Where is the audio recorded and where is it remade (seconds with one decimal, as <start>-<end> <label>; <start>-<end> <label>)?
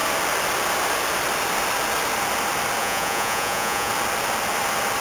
0.0-2.8 recorded; 2.8-3.9 remade; 3.9-5.0 recorded